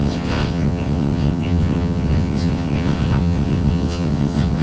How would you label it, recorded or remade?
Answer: remade